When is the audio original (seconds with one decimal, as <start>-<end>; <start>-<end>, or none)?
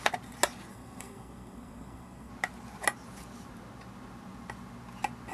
0.0-0.7; 2.3-5.3